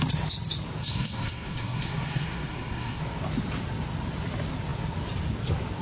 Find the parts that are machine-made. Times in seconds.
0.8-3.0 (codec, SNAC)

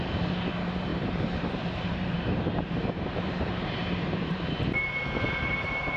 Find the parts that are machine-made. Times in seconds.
0.9-4.5 (vocoder, BigVGAN v2)

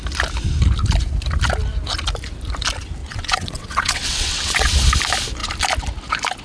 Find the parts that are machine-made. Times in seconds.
3.0-4.8 (vocoder, WaveNeXt)